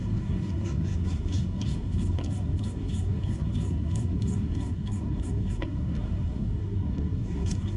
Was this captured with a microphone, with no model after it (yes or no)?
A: no